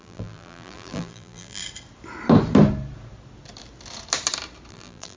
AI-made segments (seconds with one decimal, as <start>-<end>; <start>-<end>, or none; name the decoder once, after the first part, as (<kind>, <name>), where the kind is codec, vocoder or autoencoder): 0.0-1.6 (vocoder, BigVGAN v2); 4.7-5.2